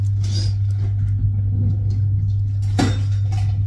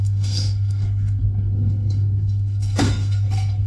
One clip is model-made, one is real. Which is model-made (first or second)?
second